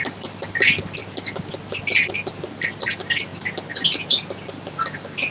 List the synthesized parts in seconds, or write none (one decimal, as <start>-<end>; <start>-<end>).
none